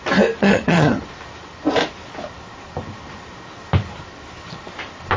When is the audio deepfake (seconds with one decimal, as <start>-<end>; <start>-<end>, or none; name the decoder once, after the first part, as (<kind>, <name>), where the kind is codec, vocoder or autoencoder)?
0.4-1.0 (vocoder, HiFi-GAN)